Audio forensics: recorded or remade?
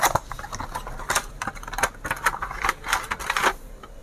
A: recorded